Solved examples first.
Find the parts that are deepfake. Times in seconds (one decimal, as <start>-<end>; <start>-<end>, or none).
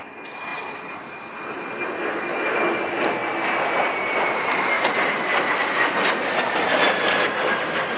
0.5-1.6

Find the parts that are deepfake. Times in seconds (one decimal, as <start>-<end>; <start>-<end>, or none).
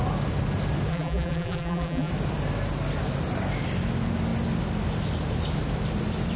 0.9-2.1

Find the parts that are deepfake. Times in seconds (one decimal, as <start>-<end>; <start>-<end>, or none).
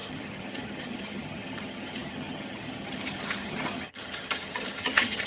0.0-5.3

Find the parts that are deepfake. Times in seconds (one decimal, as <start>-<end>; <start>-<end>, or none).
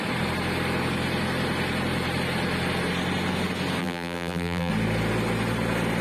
3.8-4.7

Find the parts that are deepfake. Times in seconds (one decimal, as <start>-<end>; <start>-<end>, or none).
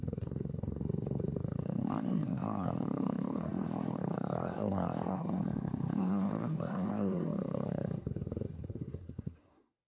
0.0-9.9